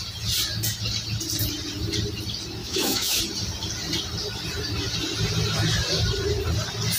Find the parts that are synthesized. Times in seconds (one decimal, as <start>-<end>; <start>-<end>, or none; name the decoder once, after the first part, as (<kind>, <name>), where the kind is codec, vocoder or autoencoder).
2.6-3.2 (autoencoder, DAC-VAE)